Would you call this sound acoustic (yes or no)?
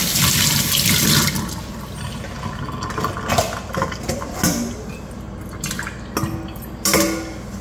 yes